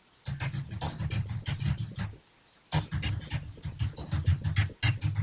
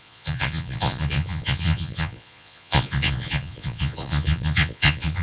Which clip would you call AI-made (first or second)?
second